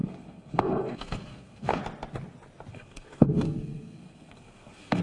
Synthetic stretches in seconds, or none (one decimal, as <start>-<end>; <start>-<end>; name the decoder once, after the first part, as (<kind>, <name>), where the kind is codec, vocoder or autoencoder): 0.0-1.8 (codec, SNAC); 2.7-5.0